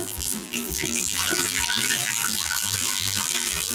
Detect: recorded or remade remade